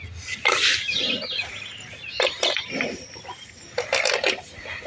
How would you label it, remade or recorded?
recorded